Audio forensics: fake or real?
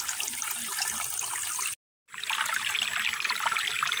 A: real